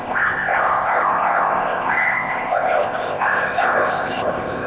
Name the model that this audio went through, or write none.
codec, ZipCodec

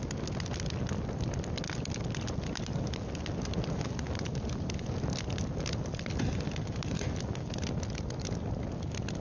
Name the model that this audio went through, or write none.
none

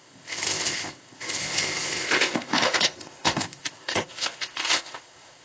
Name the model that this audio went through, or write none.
codec, ZipCodec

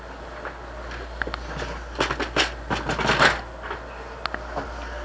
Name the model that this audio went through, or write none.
none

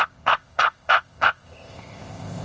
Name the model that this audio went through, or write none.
codec, ZipCodec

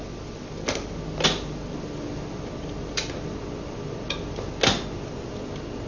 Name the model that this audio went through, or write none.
none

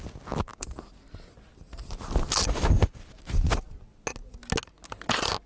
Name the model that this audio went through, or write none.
none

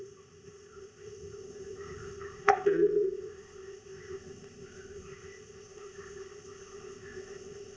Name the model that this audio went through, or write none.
codec, ZipCodec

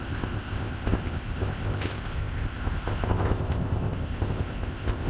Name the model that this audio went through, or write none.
codec, ZipCodec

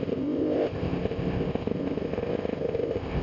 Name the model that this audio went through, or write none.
codec, ZipCodec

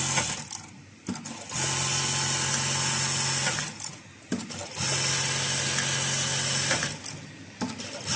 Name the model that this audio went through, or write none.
none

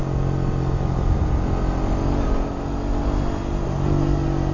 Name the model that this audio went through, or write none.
none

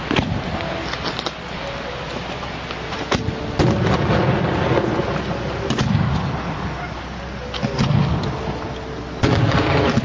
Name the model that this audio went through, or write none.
none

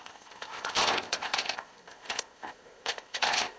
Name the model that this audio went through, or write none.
codec, ZipCodec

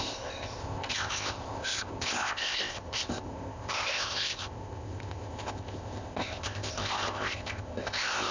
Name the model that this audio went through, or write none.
codec, ZipCodec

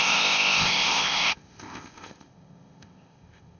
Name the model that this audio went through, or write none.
codec, ZipCodec